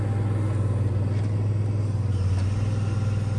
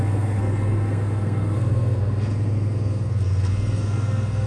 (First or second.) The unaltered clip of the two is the first